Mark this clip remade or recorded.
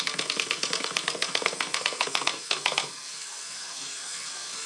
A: remade